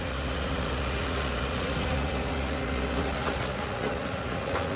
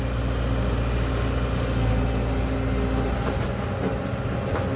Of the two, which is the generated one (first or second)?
first